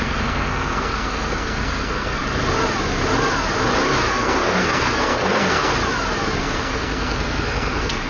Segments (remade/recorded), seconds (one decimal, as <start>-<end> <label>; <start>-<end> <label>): 0.0-2.2 remade; 2.2-4.1 recorded; 4.1-5.7 remade; 5.7-6.4 recorded; 6.4-8.1 remade